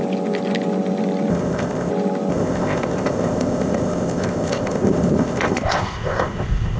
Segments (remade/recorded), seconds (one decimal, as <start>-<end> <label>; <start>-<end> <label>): 0.0-1.3 recorded; 1.3-1.9 remade; 1.9-2.3 recorded; 2.3-6.8 remade